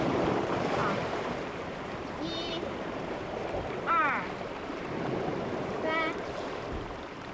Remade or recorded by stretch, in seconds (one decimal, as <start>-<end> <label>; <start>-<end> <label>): 0.0-3.4 remade; 3.4-3.9 recorded; 3.9-7.3 remade